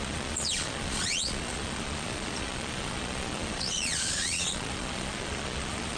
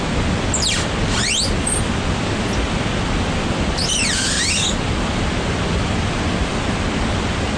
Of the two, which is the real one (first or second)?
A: second